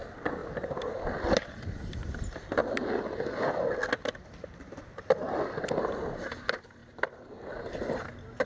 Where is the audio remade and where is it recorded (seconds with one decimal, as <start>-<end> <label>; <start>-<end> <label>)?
0.0-8.5 recorded